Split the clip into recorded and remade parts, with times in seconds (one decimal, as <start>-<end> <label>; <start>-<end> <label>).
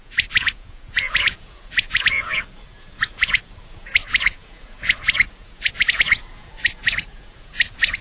0.0-8.0 remade